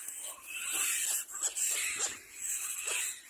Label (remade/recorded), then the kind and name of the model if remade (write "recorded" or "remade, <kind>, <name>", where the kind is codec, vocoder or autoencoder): recorded